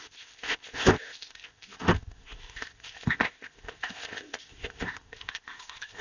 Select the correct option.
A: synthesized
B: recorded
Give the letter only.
A